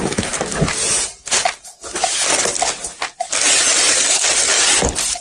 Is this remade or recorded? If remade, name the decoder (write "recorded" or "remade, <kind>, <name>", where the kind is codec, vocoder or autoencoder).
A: recorded